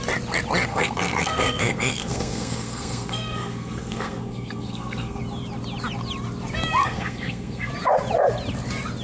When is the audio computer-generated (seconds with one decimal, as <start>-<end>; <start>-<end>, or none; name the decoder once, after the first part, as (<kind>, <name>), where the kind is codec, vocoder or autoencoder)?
0.7-5.2 (codec, SNAC); 6.8-7.7

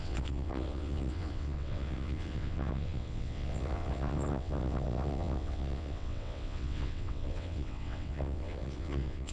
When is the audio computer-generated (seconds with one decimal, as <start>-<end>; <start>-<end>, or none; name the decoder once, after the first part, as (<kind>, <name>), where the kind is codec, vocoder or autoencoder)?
0.0-9.3 (vocoder, WaveNeXt)

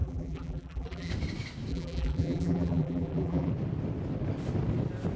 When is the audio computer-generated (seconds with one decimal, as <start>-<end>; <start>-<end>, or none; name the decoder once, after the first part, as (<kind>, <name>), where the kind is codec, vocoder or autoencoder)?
0.0-1.1 (vocoder, BigVGAN v2); 1.7-3.5

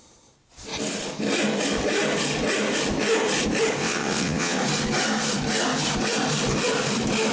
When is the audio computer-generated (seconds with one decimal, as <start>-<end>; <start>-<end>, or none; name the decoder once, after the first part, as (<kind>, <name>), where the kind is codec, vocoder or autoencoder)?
3.8-4.6 (vocoder, WaveNeXt)

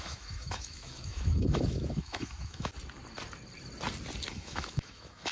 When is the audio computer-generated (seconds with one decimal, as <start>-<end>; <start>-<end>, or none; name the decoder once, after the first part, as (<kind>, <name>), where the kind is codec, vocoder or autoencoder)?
0.0-2.7 (autoencoder, DAC-VAE); 4.3-5.3

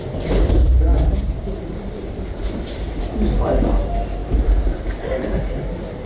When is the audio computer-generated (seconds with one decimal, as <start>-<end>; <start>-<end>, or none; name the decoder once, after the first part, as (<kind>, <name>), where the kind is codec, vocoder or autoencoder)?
0.9-3.0 (vocoder, BigVGAN v2); 4.2-5.1

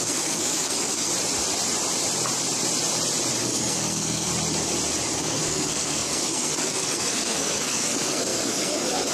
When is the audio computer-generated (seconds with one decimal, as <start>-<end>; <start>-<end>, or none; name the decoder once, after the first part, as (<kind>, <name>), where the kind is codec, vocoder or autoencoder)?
0.0-1.1 (codec, SNAC); 3.4-4.3; 5.2-9.1